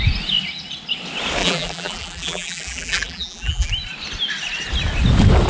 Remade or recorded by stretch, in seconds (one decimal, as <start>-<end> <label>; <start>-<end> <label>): 0.0-1.4 recorded; 1.4-3.7 remade; 3.7-5.5 recorded